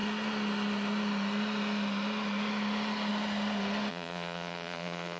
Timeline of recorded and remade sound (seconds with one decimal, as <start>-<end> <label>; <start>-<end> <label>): 0.0-3.9 recorded; 3.9-5.2 remade